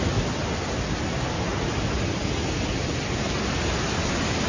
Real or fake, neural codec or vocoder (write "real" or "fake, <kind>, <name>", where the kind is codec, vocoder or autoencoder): real